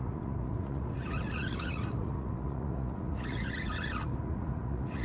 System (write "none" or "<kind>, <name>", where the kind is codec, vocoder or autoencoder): vocoder, Vocos